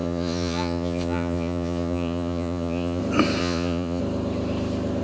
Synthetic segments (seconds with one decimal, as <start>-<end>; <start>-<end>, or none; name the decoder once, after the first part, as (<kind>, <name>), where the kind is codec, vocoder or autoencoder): 0.0-3.0 (vocoder, Vocos); 3.4-4.0